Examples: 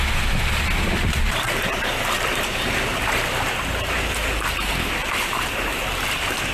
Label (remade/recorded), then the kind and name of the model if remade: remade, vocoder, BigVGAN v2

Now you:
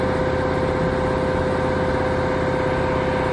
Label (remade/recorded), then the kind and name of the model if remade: recorded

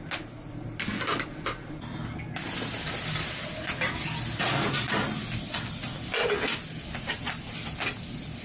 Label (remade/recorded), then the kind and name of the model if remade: recorded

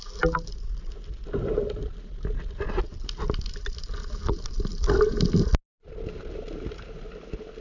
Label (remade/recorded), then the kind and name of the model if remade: recorded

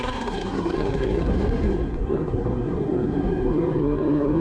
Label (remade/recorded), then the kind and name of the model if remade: remade, codec, SNAC